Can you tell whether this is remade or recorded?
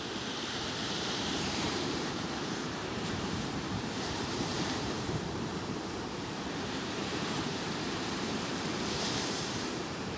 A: remade